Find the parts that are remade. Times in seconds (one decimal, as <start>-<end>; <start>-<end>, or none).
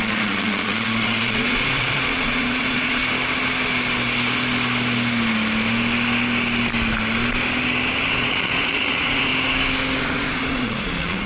0.0-3.0; 8.0-9.3; 10.0-11.3